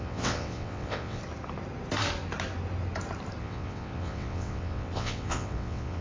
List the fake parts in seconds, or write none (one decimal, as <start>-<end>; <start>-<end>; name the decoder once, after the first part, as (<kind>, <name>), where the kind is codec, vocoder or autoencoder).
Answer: 0.0-1.2 (vocoder, WaveNeXt); 3.4-6.0